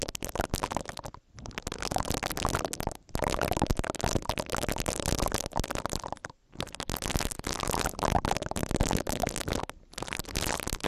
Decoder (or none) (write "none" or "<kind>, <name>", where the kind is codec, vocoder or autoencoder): none